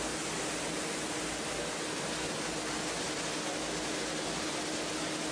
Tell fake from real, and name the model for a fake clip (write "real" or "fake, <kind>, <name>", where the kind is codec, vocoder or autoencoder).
real